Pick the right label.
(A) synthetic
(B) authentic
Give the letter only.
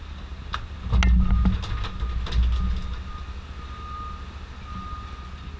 B